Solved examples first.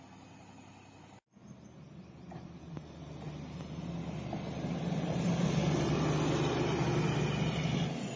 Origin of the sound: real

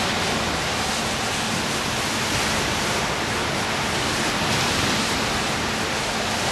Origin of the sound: real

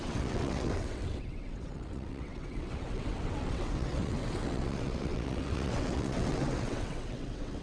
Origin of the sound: fake